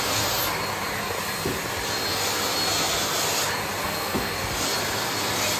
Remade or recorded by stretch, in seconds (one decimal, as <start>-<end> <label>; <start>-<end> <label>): 0.0-3.8 recorded; 3.8-4.4 remade; 4.4-5.6 recorded

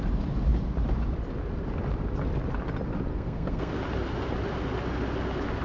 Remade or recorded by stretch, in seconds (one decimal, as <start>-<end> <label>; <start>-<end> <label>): 0.0-3.1 recorded; 3.1-3.7 remade; 3.7-5.6 recorded

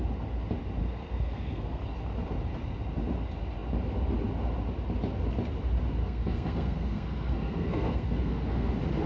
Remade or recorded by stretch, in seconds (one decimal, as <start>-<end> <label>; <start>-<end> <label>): 0.0-0.8 recorded; 0.8-1.8 remade; 1.8-6.0 recorded; 6.0-8.7 remade; 8.7-9.1 recorded

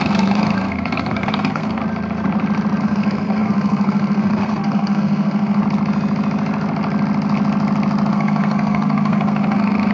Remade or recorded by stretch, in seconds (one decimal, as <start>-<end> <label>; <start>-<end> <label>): 0.0-1.8 remade; 1.8-2.8 recorded; 2.8-5.6 remade; 5.6-8.1 recorded; 8.1-9.9 remade

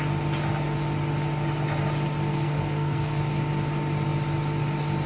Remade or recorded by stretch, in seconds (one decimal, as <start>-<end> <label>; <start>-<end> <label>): 0.0-2.3 recorded; 2.3-3.2 remade; 3.2-5.1 recorded

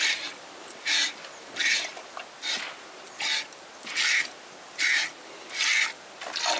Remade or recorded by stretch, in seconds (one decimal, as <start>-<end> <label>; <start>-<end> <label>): 0.0-6.6 recorded

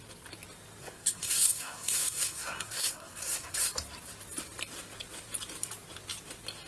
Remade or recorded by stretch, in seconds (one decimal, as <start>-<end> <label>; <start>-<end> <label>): 0.0-0.8 recorded; 0.8-3.7 remade; 3.7-6.7 recorded

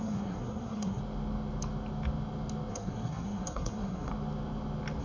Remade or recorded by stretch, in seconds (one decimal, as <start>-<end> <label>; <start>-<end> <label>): 0.0-1.0 remade; 1.0-2.7 recorded; 2.7-4.1 remade; 4.1-5.0 recorded